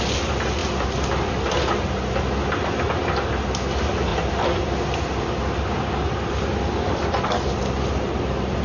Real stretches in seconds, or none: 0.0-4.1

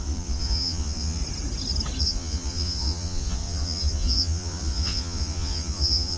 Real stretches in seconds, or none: 1.2-2.0

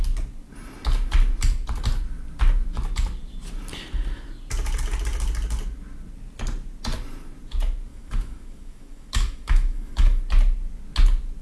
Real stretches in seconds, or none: 0.0-7.9; 10.2-11.4